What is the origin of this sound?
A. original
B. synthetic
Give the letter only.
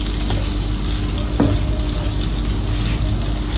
A